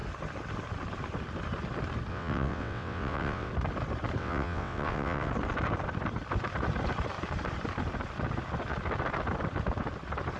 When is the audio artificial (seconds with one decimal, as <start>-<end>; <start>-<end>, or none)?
2.1-3.5; 4.2-5.3

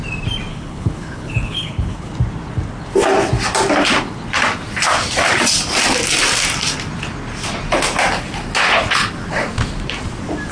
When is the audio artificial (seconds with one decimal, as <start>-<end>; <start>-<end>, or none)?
0.5-2.1

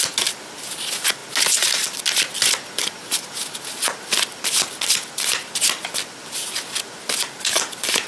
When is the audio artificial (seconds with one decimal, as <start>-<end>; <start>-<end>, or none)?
none

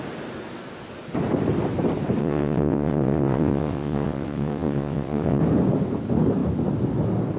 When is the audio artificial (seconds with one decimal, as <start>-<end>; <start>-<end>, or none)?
2.2-5.4

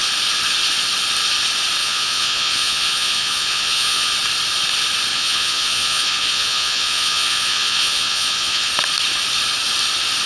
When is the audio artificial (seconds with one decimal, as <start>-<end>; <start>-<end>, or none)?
1.8-4.1; 5.1-8.7

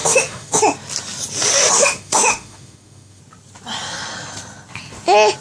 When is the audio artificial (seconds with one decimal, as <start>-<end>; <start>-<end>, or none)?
0.0-0.6; 1.8-3.2